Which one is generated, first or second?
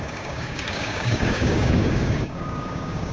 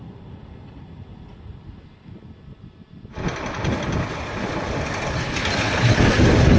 first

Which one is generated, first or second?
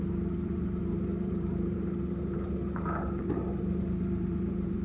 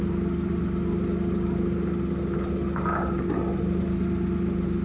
first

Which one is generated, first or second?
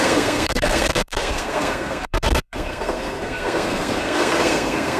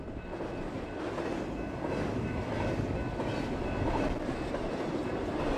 first